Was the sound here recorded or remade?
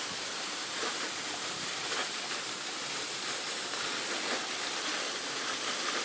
recorded